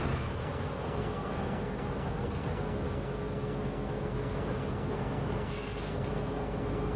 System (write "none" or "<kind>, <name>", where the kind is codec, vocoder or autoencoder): codec, SNAC